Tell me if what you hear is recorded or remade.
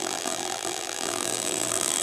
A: remade